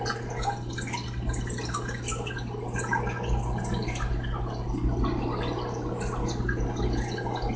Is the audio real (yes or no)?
yes